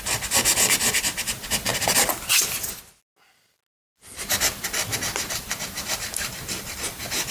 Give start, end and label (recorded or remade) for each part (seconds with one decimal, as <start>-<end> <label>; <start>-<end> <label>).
0.0-7.3 recorded